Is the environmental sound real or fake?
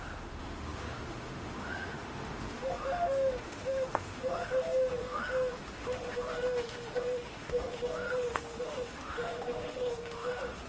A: fake